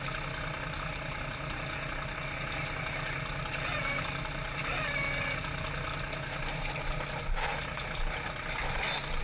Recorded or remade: recorded